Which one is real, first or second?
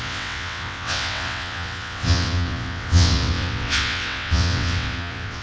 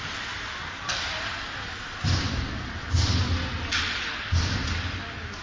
second